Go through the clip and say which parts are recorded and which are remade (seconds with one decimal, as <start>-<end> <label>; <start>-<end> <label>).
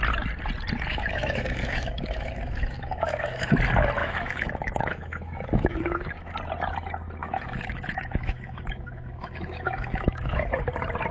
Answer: 0.0-0.9 recorded; 0.9-3.5 remade; 3.5-4.0 recorded; 4.0-6.3 remade; 6.3-7.2 recorded; 7.2-10.6 remade; 10.6-11.1 recorded